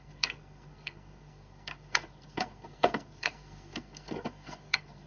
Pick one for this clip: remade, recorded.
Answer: remade